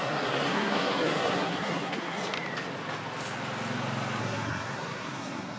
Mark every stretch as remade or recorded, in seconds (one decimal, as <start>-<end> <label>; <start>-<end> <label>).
0.0-2.2 remade; 2.2-4.2 recorded; 4.2-5.6 remade